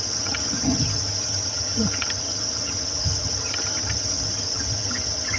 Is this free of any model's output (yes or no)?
no